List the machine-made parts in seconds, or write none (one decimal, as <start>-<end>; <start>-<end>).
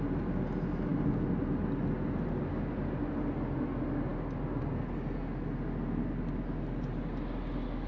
none